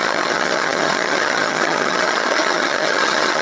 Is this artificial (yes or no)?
yes